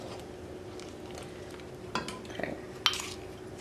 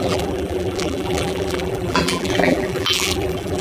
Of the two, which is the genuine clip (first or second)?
first